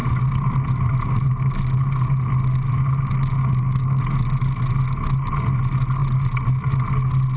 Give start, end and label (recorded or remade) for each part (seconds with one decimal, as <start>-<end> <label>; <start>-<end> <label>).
0.0-3.4 recorded; 3.4-4.0 remade; 4.0-7.4 recorded